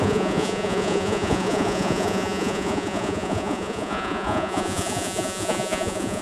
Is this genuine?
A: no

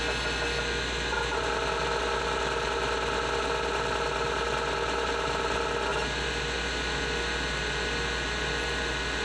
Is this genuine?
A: yes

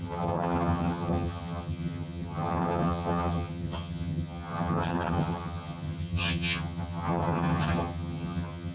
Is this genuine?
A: no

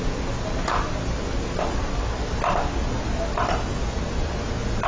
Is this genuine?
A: yes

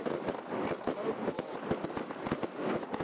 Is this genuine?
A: no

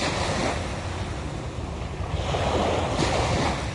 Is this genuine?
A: yes